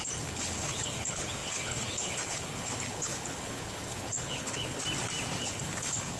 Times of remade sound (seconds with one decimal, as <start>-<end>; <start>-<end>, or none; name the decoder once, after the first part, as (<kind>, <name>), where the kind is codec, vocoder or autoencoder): 0.0-4.8 (codec, HILCodec); 5.4-6.2